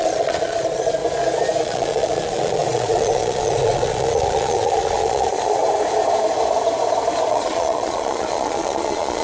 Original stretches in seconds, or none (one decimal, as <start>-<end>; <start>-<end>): 1.0-1.6; 5.6-7.3